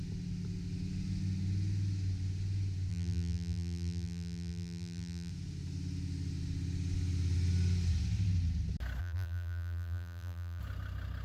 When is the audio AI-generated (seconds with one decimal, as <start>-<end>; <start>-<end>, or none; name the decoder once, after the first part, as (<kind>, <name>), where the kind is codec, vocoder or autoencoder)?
2.9-5.3 (vocoder, BigVGAN v2); 9.0-10.6